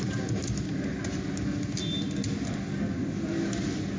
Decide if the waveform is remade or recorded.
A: recorded